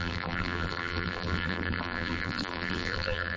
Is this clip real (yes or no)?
no